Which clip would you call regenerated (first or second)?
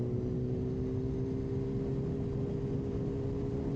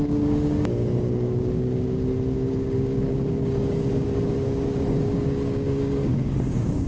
second